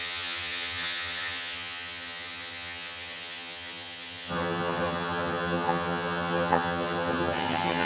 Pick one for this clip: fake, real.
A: fake